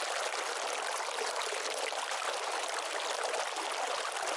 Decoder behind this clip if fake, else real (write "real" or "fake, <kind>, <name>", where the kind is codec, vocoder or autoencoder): real